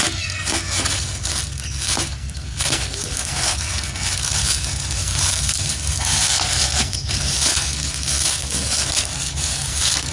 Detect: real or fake fake